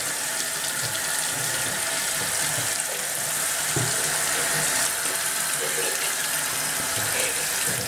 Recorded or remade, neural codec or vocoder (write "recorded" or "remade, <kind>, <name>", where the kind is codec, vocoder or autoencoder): recorded